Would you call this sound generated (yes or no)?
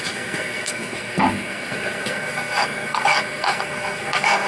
yes